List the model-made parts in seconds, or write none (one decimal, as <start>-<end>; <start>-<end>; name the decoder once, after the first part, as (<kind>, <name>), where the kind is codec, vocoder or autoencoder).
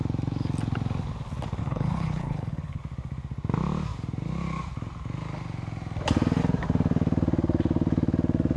1.6-2.8 (codec, HILCodec)